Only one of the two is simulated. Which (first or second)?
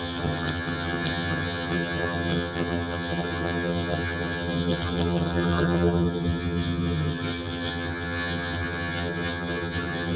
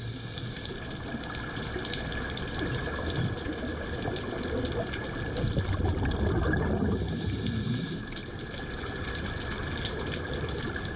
first